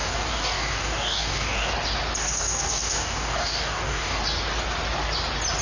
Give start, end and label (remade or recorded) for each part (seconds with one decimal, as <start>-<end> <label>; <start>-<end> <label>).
0.0-1.7 remade; 1.7-2.2 recorded; 2.2-4.2 remade; 4.2-5.6 recorded